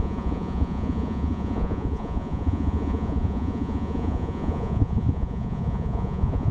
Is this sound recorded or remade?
remade